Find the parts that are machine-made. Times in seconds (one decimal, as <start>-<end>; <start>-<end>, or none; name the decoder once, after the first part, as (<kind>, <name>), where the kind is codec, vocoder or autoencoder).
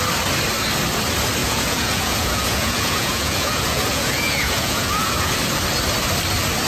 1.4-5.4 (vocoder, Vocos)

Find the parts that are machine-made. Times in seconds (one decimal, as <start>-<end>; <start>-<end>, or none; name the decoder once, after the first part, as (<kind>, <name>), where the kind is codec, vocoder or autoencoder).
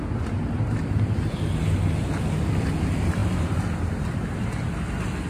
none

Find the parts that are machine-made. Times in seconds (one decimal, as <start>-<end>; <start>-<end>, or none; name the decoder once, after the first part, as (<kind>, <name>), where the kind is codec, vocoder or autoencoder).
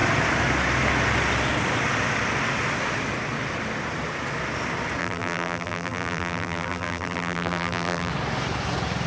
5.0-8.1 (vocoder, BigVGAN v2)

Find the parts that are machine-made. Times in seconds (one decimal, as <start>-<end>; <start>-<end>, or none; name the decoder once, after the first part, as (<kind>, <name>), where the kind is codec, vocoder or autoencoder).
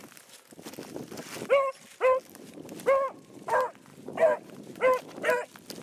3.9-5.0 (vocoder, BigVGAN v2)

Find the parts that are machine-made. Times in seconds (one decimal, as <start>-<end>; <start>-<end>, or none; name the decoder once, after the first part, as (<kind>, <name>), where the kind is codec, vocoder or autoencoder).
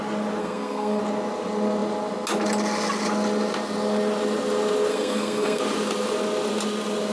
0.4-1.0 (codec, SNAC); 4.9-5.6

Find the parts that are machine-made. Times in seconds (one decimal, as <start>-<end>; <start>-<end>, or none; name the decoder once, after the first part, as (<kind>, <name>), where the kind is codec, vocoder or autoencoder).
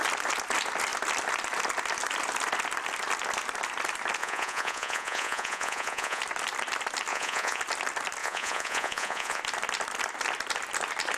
4.2-6.2 (vocoder, Vocos); 7.1-7.6; 8.2-9.4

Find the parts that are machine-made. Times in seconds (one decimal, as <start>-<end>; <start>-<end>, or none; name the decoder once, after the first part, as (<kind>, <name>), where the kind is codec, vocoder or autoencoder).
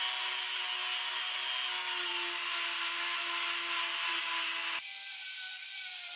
none